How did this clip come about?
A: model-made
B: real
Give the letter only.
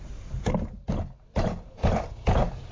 B